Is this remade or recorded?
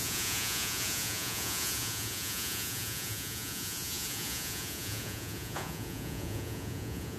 remade